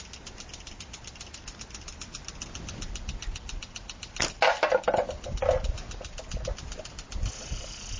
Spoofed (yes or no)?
no